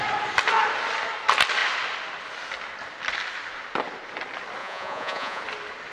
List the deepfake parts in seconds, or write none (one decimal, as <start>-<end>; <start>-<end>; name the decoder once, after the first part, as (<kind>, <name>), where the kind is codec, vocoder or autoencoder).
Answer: 4.6-5.4 (vocoder, Vocos)